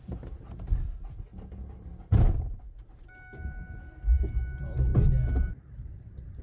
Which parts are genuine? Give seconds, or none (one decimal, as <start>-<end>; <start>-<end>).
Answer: 0.0-6.4